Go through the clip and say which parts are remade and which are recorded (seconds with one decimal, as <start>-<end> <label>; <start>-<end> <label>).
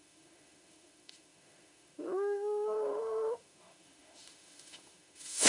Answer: 0.0-5.5 remade